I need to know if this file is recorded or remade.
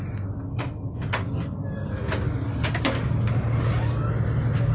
recorded